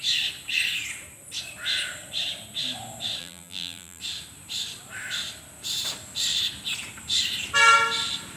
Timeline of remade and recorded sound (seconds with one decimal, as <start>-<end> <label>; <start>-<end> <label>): 0.0-3.2 recorded; 3.2-4.0 remade; 4.0-8.4 recorded